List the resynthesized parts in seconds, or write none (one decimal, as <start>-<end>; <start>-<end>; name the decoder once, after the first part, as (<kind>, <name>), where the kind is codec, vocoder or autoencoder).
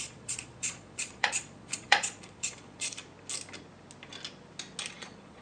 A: 0.0-3.0 (vocoder, Vocos); 4.9-5.4